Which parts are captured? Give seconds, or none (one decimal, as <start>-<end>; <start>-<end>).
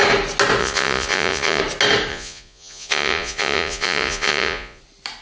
0.0-0.6; 1.6-2.1; 4.8-5.2